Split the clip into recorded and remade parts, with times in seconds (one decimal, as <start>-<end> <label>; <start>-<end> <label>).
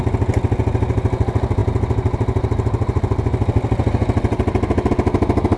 0.0-5.6 recorded